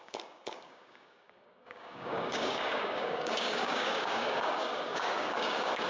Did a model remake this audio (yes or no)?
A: yes